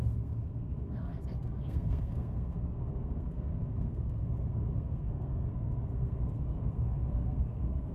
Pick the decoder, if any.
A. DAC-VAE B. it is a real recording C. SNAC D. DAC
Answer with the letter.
C